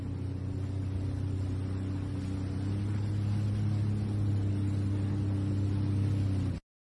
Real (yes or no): yes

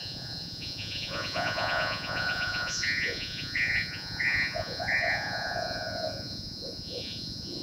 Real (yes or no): no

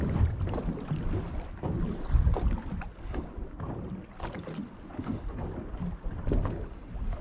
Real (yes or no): yes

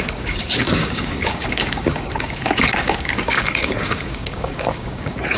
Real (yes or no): no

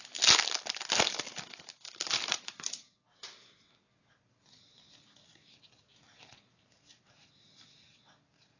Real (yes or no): yes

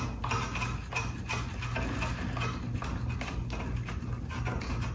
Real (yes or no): yes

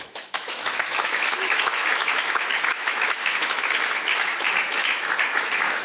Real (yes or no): no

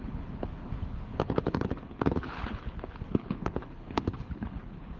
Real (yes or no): no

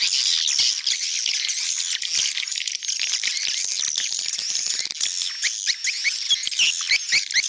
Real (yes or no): yes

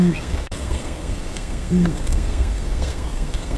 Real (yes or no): no